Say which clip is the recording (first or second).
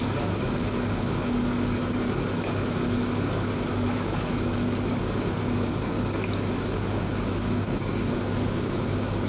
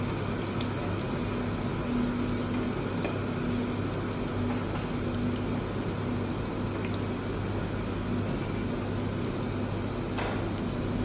second